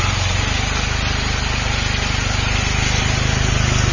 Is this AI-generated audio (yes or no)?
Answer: no